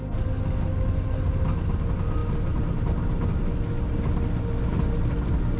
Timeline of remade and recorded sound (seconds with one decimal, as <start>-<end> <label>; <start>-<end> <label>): 0.0-5.6 recorded